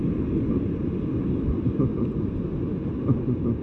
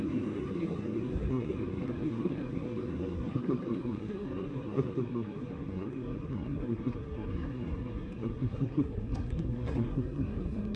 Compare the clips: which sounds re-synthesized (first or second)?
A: second